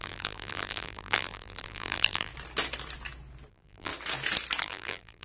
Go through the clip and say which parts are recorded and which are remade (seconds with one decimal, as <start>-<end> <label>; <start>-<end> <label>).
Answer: 0.0-2.3 remade; 2.3-3.5 recorded; 3.5-3.9 remade; 3.9-4.6 recorded; 4.6-5.2 remade